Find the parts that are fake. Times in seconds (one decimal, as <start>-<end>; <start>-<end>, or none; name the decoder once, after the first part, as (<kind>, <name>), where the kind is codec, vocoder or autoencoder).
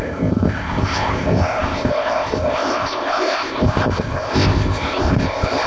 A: 0.0-5.7 (codec, ZipCodec)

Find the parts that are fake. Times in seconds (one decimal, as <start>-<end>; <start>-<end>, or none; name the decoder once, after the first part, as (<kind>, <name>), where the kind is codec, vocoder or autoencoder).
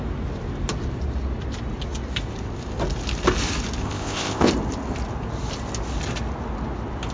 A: 3.8-4.5 (codec, ZipCodec)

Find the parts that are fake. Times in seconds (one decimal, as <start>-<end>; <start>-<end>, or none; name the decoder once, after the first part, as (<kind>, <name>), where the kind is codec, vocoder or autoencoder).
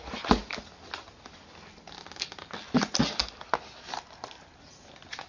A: none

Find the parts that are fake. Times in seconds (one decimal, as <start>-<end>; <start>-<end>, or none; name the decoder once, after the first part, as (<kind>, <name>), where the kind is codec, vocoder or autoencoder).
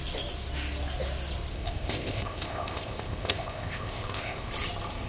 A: 1.5-4.5 (codec, ZipCodec)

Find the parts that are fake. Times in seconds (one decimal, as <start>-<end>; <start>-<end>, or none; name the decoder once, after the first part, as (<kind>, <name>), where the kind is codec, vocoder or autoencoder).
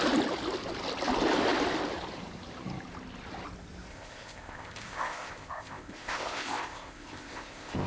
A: 3.9-7.9 (codec, ZipCodec)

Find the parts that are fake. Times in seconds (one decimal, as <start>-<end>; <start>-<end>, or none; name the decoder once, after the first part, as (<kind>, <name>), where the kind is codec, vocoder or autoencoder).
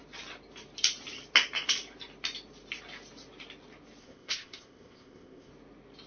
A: 4.0-5.5 (codec, ZipCodec)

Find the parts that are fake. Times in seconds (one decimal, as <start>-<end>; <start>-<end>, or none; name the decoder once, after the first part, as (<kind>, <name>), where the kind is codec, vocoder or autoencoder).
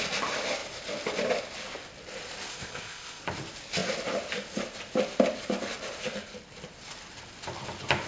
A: 2.5-3.2 (codec, ZipCodec)